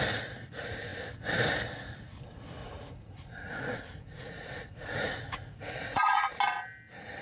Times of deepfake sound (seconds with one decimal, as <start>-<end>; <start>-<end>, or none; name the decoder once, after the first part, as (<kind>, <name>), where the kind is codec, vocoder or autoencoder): 2.6-6.4 (vocoder, Vocos)